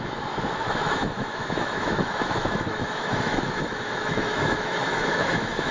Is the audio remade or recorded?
remade